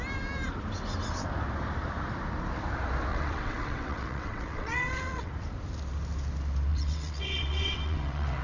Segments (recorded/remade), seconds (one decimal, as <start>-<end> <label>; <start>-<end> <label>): 0.0-3.1 recorded; 3.1-5.3 remade; 5.3-6.7 recorded; 6.7-8.4 remade